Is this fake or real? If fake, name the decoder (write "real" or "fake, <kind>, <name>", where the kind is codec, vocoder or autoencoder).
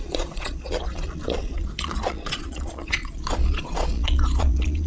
fake, vocoder, Vocos